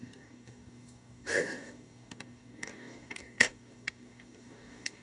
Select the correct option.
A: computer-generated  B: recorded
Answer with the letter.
A